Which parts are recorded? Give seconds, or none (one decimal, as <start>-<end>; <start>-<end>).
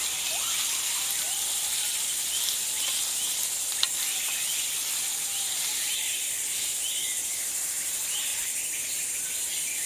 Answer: 0.0-5.1; 6.5-9.9